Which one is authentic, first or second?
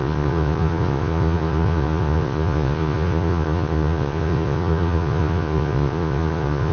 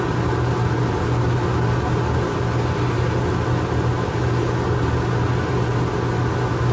second